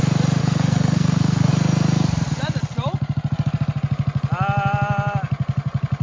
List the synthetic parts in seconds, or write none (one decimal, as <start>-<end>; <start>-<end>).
0.4-1.5